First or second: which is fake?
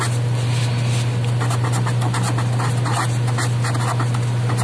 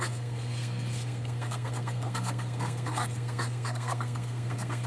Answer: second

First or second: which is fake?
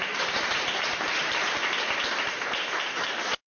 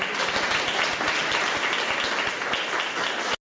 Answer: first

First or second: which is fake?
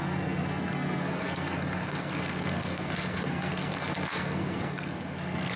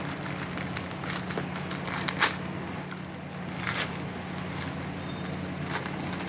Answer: first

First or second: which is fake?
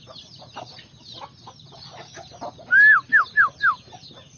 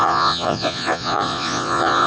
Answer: second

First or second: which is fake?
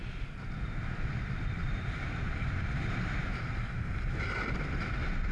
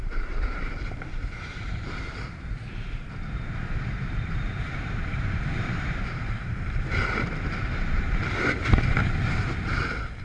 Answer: second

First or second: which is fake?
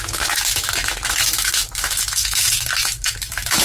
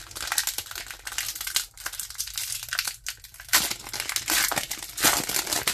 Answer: first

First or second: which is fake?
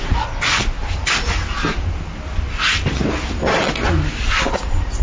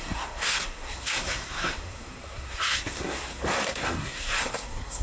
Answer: second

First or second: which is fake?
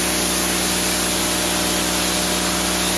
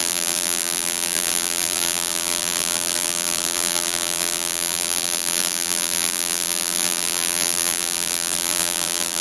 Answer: second